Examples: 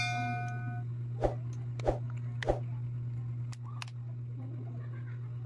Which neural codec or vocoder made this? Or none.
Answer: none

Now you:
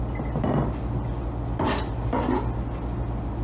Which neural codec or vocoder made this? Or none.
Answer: none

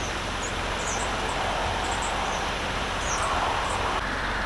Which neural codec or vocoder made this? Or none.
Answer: none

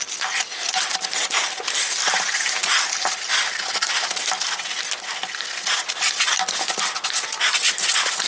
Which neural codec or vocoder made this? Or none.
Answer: none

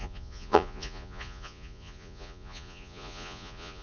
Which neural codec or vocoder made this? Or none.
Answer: vocoder, Vocos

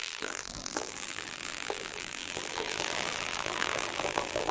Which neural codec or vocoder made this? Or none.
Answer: vocoder, BigVGAN v2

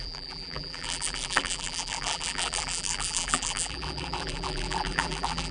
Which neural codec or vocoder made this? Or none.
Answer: vocoder, BigVGAN v2